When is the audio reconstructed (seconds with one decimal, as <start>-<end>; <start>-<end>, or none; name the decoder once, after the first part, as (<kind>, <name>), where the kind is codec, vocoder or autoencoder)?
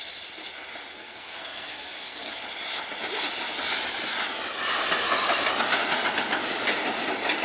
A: 0.9-2.4 (codec, SNAC)